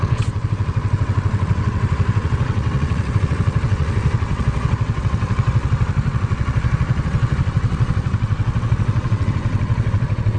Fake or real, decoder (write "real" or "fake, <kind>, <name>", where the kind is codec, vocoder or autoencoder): fake, vocoder, WaveNeXt